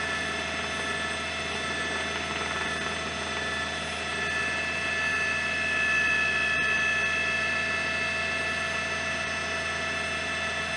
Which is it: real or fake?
real